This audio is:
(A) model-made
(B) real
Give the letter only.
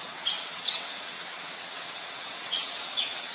A